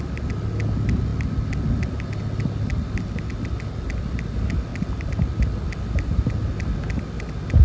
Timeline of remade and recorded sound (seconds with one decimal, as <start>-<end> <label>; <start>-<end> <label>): 0.0-7.6 recorded